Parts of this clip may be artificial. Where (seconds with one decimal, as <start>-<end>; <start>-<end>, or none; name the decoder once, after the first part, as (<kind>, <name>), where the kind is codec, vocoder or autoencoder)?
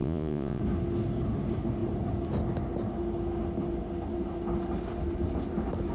0.0-0.6 (vocoder, Vocos)